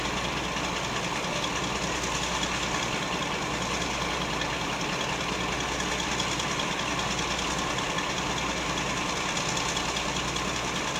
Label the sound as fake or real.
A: real